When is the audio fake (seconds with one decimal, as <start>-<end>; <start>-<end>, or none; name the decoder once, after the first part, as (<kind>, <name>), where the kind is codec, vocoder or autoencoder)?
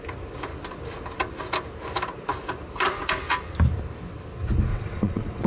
4.7-5.5 (vocoder, WaveNeXt)